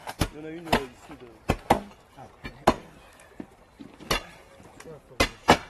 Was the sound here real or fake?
real